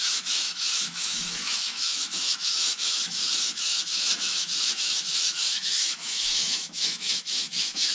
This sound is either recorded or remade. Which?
remade